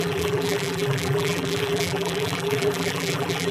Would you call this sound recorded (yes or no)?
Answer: no